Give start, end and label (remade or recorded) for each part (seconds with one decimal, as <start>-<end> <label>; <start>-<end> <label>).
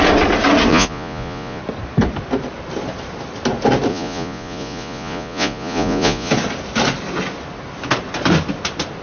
0.0-0.7 recorded; 0.7-1.6 remade; 1.6-3.9 recorded; 3.9-6.3 remade; 6.3-9.0 recorded